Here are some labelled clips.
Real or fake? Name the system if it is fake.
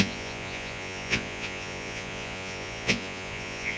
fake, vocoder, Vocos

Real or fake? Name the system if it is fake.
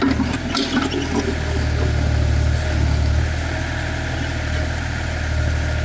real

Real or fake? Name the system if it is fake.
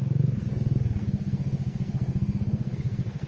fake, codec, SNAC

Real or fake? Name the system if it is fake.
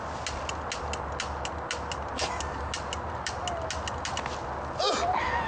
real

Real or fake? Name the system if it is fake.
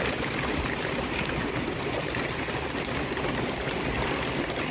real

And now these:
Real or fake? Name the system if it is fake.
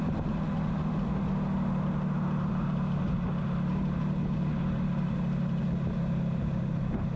real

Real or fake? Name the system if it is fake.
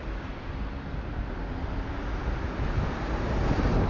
real